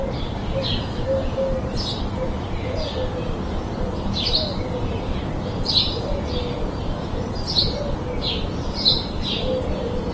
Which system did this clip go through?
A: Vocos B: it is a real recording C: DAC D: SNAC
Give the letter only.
B